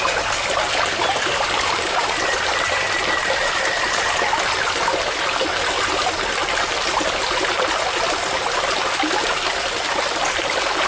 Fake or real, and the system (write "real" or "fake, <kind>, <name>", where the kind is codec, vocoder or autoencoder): real